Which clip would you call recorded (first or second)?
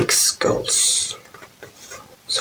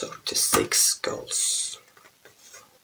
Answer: second